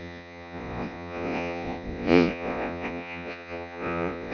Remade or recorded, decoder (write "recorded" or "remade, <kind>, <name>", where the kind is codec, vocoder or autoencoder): remade, vocoder, Vocos